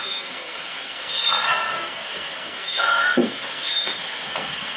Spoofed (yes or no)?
yes